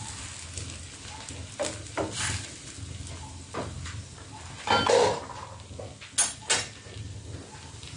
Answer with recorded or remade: recorded